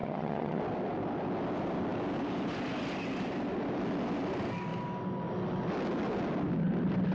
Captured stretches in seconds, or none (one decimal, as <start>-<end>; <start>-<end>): 0.6-7.1